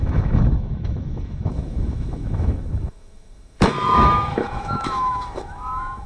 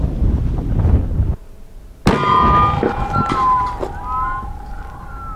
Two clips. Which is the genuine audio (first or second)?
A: second